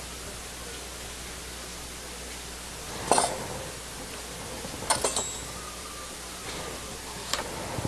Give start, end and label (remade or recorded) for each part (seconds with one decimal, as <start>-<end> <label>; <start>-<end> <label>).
0.0-4.1 recorded; 4.1-4.7 remade; 4.7-5.4 recorded; 5.4-6.5 remade; 6.5-7.9 recorded